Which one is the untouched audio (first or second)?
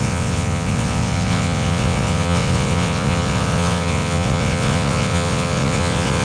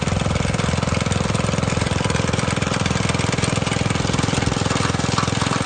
second